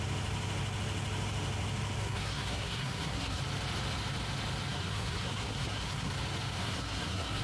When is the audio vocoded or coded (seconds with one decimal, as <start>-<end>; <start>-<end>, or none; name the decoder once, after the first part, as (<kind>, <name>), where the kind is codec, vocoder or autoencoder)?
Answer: 2.0-3.4 (codec, SNAC); 4.7-6.1; 6.6-7.4